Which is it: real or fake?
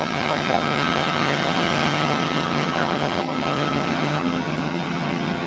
fake